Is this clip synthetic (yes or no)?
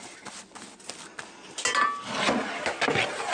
no